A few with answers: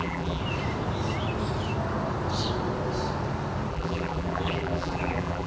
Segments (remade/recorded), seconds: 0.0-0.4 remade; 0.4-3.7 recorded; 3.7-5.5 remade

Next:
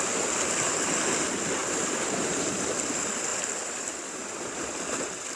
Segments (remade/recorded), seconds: 0.0-1.6 recorded; 1.6-2.7 remade; 2.7-3.3 recorded; 3.3-4.2 remade; 4.2-5.4 recorded

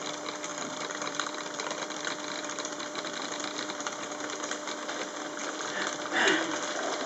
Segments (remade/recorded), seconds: 0.0-0.5 recorded; 0.5-4.1 remade; 4.1-5.4 recorded; 5.4-7.1 remade